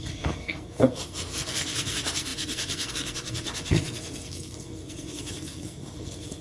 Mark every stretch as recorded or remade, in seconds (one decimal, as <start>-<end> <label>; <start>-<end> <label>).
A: 0.0-6.4 remade